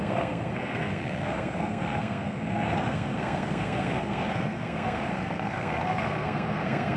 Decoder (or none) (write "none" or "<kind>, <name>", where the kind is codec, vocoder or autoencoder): codec, SNAC